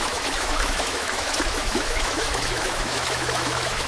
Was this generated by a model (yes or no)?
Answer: yes